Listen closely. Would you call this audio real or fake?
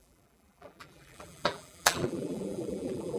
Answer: fake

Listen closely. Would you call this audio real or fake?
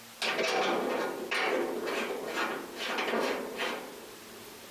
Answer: real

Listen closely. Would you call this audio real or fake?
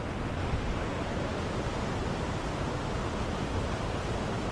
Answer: real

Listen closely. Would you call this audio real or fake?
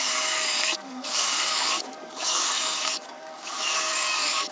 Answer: fake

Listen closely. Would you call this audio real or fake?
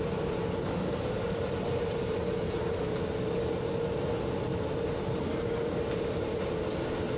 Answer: real